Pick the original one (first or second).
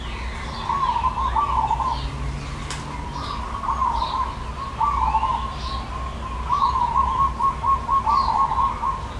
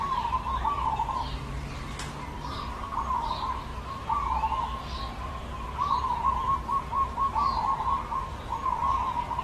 first